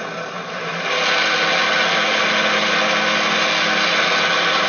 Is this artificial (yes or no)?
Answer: no